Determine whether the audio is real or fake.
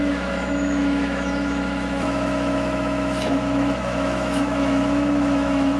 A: fake